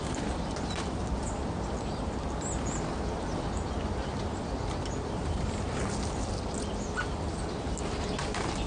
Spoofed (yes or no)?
no